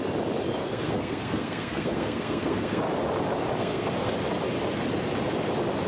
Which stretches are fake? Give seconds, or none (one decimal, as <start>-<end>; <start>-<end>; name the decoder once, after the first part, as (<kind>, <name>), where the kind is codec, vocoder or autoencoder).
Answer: 0.6-2.8 (codec, SNAC); 3.6-4.1